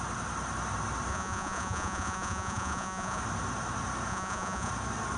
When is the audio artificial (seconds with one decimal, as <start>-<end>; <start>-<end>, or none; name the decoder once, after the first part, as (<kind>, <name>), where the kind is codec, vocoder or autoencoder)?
1.1-3.2 (vocoder, Vocos); 4.1-4.7